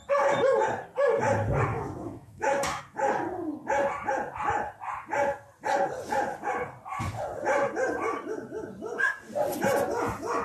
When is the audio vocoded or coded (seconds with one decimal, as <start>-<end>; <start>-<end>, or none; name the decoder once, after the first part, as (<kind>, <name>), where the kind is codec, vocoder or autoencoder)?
1.7-2.8 (autoencoder, DAC-VAE)